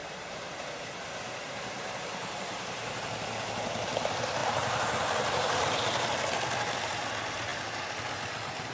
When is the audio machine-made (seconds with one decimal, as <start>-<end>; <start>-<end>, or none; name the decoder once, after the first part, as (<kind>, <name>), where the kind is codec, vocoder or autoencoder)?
0.0-3.1 (vocoder, BigVGAN v2); 4.4-5.8